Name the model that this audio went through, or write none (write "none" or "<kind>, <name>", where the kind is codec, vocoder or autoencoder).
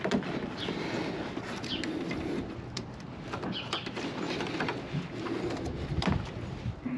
none